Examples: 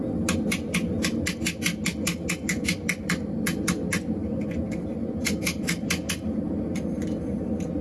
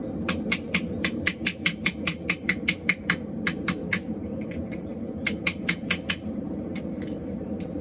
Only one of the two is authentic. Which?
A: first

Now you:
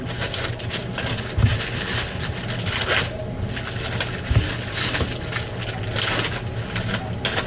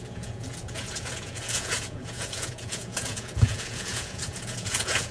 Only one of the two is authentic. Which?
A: first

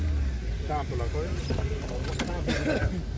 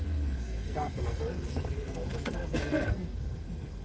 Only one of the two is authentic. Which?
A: first